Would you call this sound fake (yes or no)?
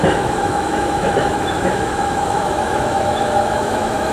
yes